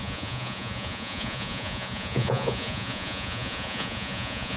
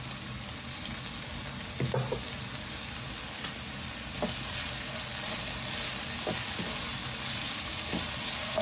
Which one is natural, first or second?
second